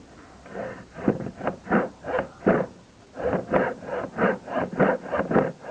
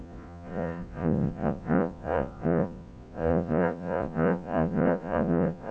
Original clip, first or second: first